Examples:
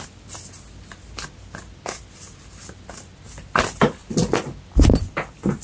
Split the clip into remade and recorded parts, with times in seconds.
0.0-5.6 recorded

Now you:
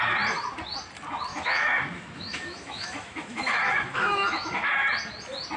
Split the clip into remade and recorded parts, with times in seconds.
0.0-1.3 recorded; 1.3-4.7 remade; 4.7-5.6 recorded